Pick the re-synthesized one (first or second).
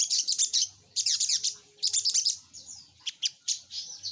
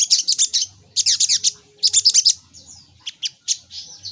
first